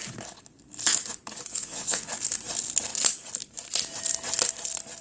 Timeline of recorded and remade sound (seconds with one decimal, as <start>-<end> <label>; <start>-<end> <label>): 0.0-1.5 recorded; 1.5-2.1 remade; 2.1-5.0 recorded

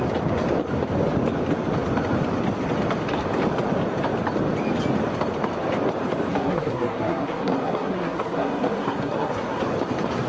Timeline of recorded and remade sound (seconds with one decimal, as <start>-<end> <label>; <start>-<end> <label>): 0.0-6.3 recorded; 6.3-9.6 remade; 9.6-10.3 recorded

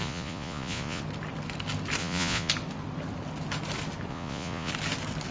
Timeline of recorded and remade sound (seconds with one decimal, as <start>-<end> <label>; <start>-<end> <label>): 0.0-1.0 remade; 1.0-2.0 recorded; 2.0-2.5 remade; 2.5-4.1 recorded; 4.1-4.7 remade; 4.7-5.3 recorded

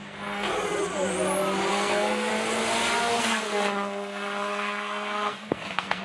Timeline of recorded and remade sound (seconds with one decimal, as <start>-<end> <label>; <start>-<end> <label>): 0.0-0.5 remade; 0.5-1.7 recorded; 1.7-2.3 remade; 2.3-3.2 recorded; 3.2-6.0 remade

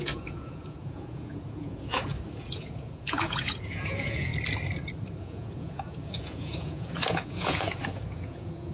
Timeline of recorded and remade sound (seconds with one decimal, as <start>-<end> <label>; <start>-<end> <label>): 0.0-4.3 remade; 4.3-5.2 recorded; 5.2-8.7 remade

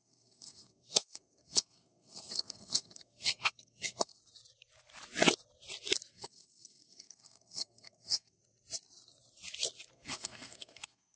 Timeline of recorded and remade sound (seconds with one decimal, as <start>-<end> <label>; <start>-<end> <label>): 0.0-4.2 remade; 4.2-6.1 recorded; 6.1-8.4 remade; 8.4-9.9 recorded; 9.9-11.2 remade

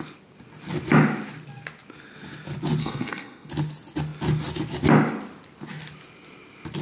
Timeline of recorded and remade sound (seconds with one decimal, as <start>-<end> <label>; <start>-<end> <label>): 0.0-2.8 recorded; 2.8-3.5 remade; 3.5-6.8 recorded

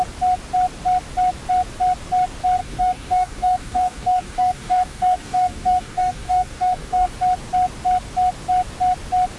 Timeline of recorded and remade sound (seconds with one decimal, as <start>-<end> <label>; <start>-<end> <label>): 0.0-2.6 recorded; 2.6-7.1 remade; 7.1-9.4 recorded